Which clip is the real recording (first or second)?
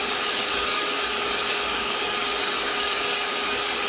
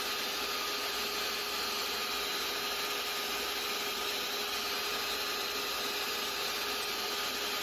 second